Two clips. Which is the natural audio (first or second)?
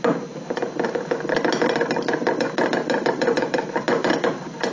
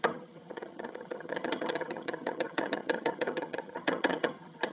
first